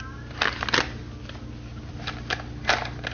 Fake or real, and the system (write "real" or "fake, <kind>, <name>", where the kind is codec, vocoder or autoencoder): real